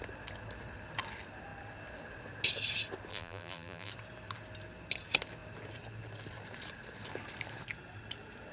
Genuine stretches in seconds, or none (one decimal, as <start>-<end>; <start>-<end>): 0.0-3.1; 3.9-8.5